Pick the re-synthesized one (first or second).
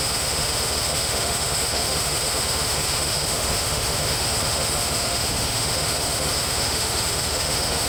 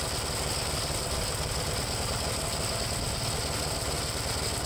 first